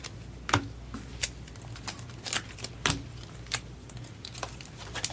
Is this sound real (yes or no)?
yes